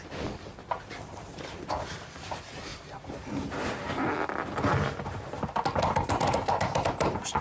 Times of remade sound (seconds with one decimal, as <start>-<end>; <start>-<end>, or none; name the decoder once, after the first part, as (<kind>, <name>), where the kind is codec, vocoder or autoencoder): none